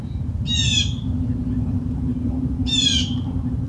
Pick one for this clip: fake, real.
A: fake